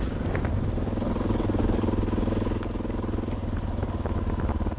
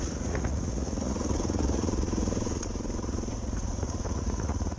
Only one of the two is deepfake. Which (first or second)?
second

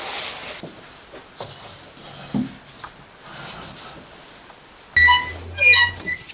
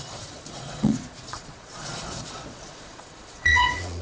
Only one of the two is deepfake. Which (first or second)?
second